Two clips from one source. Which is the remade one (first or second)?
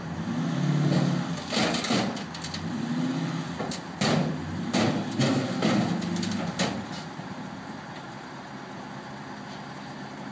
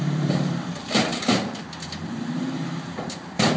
second